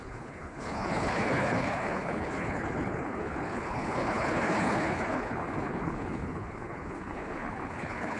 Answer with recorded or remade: remade